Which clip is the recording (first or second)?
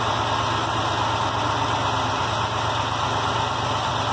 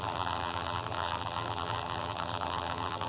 first